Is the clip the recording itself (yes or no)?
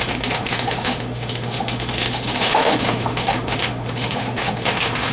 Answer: no